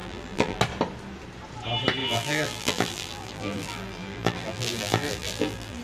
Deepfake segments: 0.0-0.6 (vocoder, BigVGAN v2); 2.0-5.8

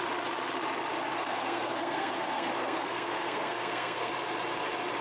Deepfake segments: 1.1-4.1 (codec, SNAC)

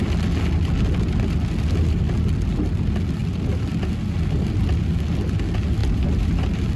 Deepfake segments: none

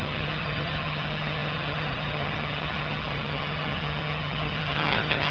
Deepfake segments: 0.0-5.3 (vocoder, HiFi-GAN)

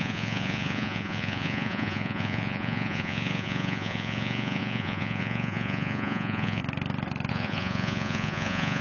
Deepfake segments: 0.0-6.6 (vocoder, Vocos); 7.3-8.8

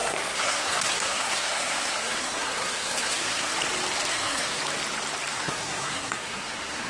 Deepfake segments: 0.0-3.5 (codec, SNAC); 4.1-4.6; 5.3-6.9

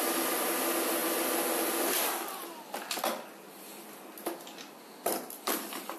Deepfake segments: none

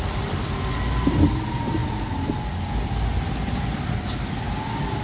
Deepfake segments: none